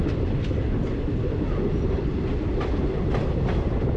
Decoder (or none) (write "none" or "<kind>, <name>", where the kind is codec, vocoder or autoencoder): none